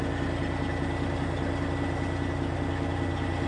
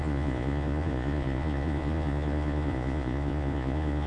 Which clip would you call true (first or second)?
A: first